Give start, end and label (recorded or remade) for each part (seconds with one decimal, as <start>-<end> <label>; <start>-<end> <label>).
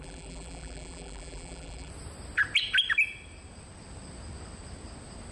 0.0-1.9 remade; 1.9-5.3 recorded